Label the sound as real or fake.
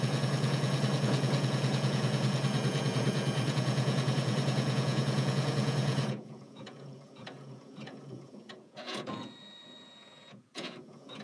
fake